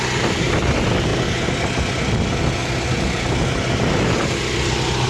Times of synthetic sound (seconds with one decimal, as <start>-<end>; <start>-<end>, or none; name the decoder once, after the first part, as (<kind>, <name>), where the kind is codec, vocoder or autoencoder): none